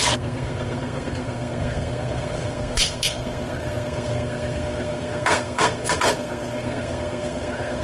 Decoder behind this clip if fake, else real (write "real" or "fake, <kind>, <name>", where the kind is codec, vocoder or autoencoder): fake, codec, SNAC